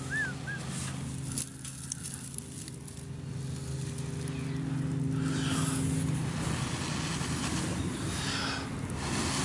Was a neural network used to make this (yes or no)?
no